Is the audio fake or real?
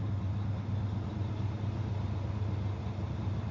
real